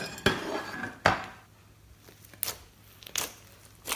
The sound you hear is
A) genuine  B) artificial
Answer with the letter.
A